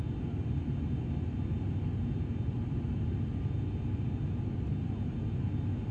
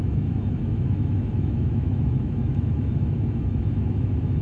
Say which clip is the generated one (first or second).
second